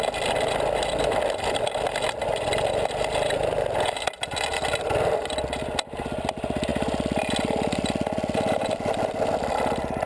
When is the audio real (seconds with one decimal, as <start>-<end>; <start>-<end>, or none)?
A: 0.0-10.1